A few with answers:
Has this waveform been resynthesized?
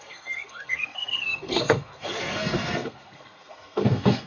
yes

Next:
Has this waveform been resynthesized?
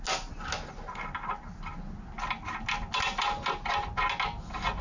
no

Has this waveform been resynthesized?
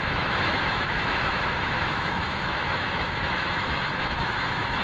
yes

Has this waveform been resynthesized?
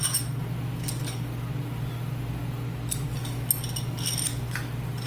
no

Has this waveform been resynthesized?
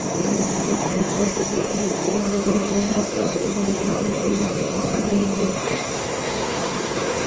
yes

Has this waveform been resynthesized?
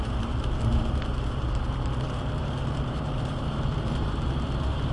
yes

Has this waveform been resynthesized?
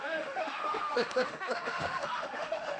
yes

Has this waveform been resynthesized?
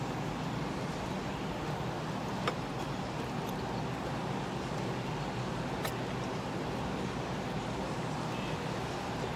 no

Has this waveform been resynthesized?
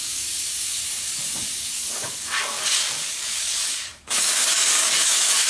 yes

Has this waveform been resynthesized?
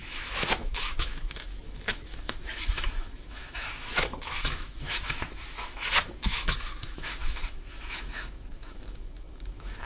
yes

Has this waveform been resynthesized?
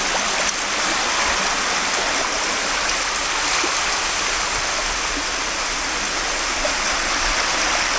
no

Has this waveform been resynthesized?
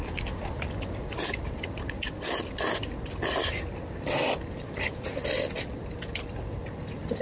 no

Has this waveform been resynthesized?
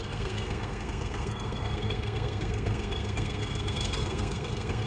yes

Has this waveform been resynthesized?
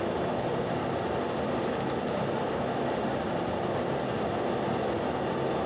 no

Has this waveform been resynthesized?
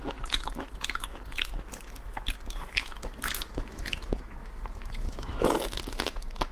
yes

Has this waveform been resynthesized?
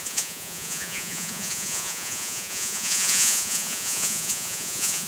yes